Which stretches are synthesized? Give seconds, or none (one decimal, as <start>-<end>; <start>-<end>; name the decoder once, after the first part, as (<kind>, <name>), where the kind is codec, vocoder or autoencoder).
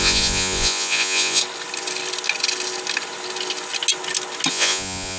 0.0-1.4 (vocoder, Vocos); 4.5-5.2